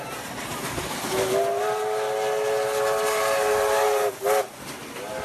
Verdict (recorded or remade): recorded